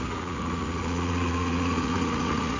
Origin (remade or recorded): remade